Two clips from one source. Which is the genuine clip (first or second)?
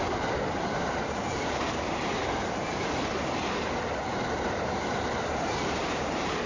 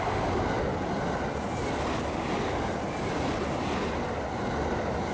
second